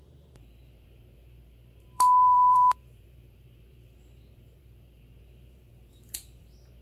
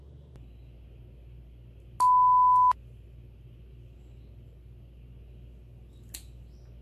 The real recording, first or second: second